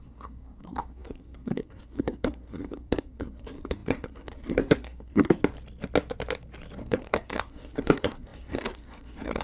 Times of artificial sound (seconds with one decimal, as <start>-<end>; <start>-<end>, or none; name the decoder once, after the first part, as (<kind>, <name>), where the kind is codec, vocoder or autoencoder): 0.0-5.4 (codec, SNAC); 6.8-9.4